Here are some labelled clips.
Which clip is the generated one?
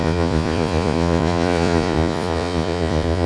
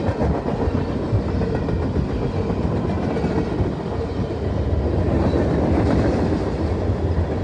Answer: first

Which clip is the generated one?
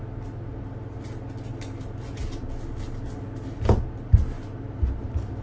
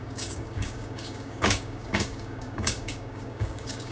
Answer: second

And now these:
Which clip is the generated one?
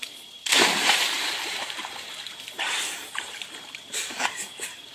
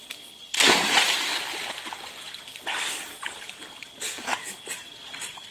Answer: first